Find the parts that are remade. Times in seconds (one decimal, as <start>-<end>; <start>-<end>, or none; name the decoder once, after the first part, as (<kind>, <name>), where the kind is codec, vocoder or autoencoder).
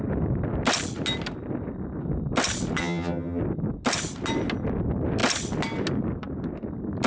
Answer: 2.8-3.4 (vocoder, HiFi-GAN)